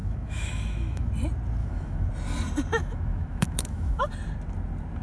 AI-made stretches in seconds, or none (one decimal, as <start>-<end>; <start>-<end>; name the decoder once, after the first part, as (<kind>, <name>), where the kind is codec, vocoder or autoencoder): 0.0-1.1 (autoencoder, DAC-VAE); 1.6-2.1; 2.8-4.0